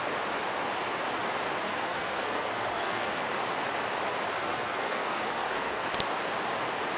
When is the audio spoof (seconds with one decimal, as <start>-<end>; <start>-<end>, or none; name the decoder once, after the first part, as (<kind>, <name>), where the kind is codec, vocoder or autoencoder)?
1.7-3.2 (codec, SNAC); 4.4-5.9